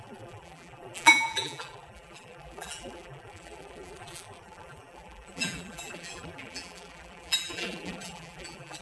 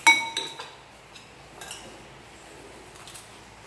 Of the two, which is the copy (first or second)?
first